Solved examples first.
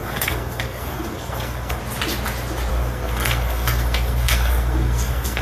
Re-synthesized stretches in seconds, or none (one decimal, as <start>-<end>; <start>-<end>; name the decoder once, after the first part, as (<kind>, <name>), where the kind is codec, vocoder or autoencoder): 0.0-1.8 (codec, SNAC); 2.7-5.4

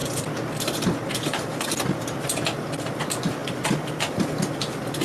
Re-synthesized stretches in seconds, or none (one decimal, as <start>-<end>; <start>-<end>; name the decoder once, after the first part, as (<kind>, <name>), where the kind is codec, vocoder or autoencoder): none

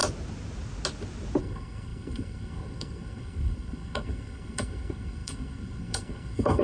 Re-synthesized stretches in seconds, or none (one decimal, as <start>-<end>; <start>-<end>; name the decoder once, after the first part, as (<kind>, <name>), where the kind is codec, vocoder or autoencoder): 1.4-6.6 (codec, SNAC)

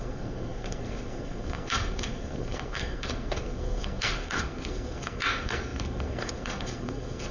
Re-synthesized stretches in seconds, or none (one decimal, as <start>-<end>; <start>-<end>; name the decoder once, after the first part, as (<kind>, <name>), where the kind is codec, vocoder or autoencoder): 0.0-7.3 (codec, SNAC)

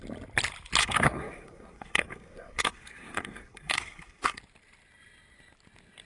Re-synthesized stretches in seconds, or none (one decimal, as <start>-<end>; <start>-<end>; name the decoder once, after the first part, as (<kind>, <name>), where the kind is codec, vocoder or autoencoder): 0.8-4.4 (codec, SNAC)

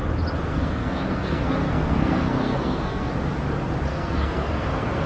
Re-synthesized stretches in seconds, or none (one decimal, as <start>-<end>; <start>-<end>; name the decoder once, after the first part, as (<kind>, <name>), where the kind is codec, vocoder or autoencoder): 0.5-3.1 (codec, SNAC); 3.9-5.1

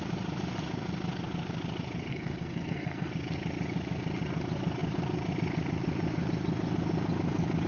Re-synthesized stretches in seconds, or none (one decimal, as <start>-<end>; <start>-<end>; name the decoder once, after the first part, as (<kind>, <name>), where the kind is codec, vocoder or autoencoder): 2.1-3.1 (codec, SNAC)

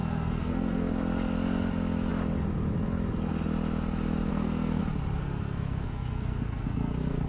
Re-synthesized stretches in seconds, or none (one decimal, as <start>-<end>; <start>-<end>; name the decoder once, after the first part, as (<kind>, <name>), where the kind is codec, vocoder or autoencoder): 0.0-0.9 (codec, SNAC); 4.3-4.8; 5.2-7.3